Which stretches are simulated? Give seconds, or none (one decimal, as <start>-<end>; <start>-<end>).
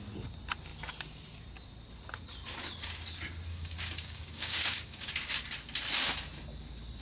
3.5-5.1